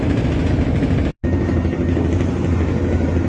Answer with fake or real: real